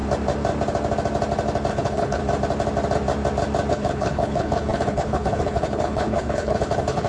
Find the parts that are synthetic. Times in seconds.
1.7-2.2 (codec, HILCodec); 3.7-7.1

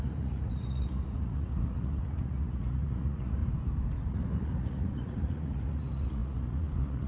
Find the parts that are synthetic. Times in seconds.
0.0-3.4 (vocoder, Vocos); 4.1-7.1

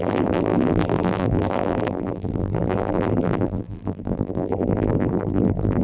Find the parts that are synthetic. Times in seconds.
0.0-5.8 (vocoder, BigVGAN v2)

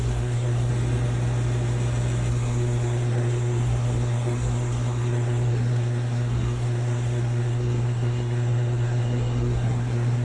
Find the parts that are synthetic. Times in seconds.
0.0-0.7 (codec, SNAC); 2.3-10.2

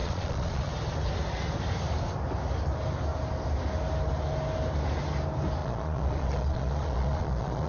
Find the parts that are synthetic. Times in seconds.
0.0-0.7 (vocoder, Vocos); 5.6-7.7

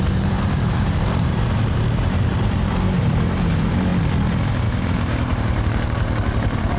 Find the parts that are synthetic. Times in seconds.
0.0-3.9 (vocoder, BigVGAN v2); 4.9-6.8

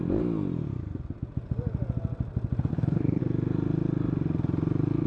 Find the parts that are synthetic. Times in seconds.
2.7-3.2 (codec, HILCodec)

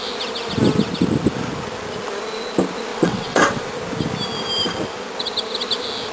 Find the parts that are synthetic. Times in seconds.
2.9-3.7 (vocoder, WaveNeXt)